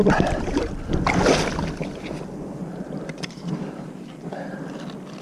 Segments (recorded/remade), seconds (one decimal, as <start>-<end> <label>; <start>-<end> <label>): 0.0-0.7 remade; 0.7-2.7 recorded; 2.7-4.5 remade; 4.5-5.2 recorded